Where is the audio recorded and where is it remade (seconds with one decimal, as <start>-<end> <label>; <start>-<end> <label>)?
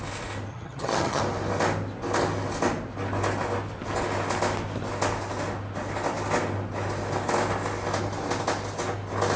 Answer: 0.0-0.5 recorded; 0.5-1.2 remade; 1.2-9.4 recorded